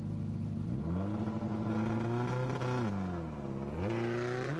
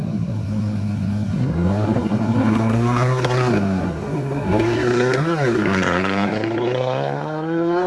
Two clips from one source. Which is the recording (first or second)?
first